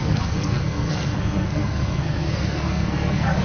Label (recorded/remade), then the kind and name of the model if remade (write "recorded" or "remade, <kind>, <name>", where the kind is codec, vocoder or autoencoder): remade, codec, SNAC